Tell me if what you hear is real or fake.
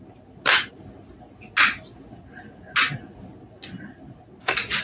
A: real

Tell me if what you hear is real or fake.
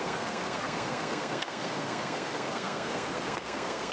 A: fake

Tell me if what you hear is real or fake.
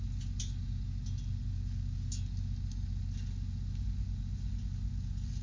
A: real